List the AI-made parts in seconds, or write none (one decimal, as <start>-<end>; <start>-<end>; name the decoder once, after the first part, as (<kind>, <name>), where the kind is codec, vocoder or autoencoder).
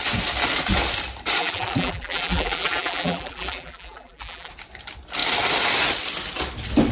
1.4-4.5 (vocoder, BigVGAN v2)